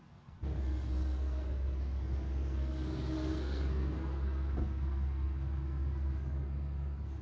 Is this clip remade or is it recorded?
remade